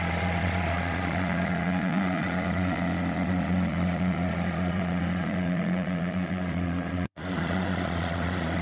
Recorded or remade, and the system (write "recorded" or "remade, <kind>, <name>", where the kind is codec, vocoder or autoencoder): remade, vocoder, Vocos